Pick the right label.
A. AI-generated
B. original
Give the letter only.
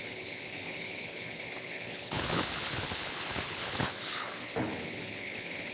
A